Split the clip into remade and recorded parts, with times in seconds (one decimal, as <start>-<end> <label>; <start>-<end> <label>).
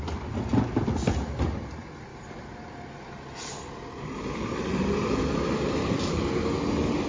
0.0-0.5 remade; 0.5-1.1 recorded; 1.1-7.1 remade